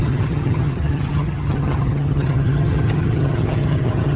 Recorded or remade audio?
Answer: remade